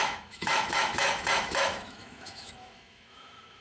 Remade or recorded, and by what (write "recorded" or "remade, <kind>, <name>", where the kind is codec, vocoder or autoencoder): remade, autoencoder, DAC-VAE